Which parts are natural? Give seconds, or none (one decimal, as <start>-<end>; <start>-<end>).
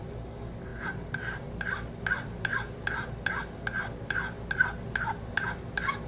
0.0-6.1